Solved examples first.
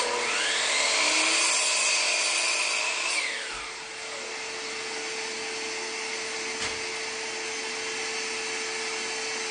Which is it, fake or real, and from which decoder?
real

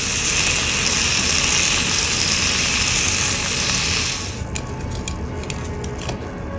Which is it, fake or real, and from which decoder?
real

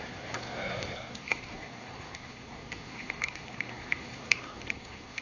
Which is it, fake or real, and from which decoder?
fake, codec, SNAC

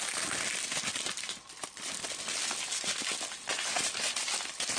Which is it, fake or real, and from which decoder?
real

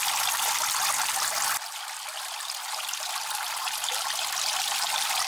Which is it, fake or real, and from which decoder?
real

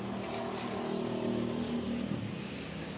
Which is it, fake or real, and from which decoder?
real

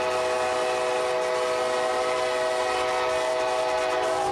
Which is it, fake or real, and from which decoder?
real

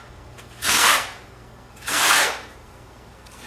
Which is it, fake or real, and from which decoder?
fake, codec, SNAC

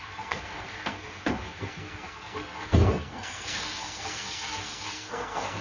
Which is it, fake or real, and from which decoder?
fake, codec, SNAC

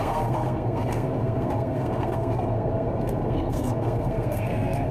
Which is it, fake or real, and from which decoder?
fake, codec, SNAC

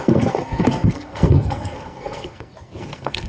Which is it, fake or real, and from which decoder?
fake, codec, SNAC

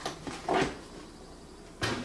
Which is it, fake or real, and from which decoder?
real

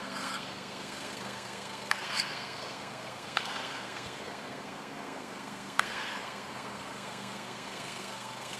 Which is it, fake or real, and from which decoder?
fake, codec, SNAC